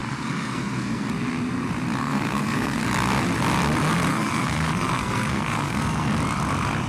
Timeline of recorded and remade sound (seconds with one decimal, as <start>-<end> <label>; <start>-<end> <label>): 0.0-1.1 remade; 1.1-2.0 recorded; 2.0-2.8 remade; 2.8-4.1 recorded; 4.1-6.1 remade; 6.1-6.9 recorded

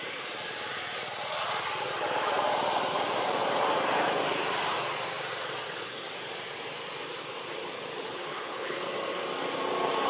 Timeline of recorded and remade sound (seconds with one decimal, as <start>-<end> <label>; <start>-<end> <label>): 0.0-8.0 recorded; 8.0-8.9 remade; 8.9-10.1 recorded

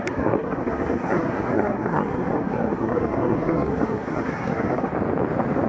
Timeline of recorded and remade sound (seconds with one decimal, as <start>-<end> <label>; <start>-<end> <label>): 0.0-4.9 remade; 4.9-5.7 recorded

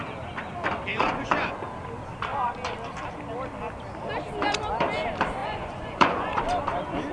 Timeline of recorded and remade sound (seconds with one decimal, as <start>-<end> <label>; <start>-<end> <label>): 0.0-0.9 recorded; 0.9-1.7 remade; 1.7-5.4 recorded; 5.4-6.4 remade; 6.4-7.1 recorded

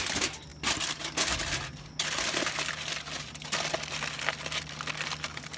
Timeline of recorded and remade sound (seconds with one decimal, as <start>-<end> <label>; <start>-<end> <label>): 0.0-5.6 recorded